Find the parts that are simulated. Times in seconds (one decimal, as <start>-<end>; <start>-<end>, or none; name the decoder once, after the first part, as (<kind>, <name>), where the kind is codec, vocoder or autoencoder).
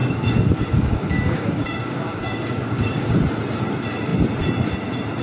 0.0-3.1 (codec, DAC)